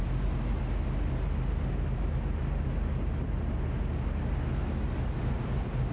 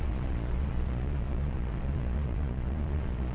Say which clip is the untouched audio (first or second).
first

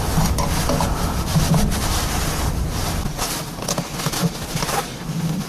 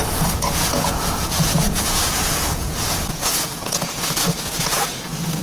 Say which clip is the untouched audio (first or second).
first